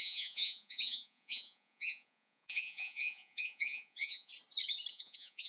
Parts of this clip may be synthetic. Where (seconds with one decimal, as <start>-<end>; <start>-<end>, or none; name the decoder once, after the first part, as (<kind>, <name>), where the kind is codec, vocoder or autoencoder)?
0.0-4.3 (vocoder, Vocos); 4.9-5.5